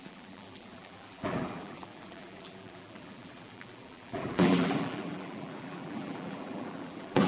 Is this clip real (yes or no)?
no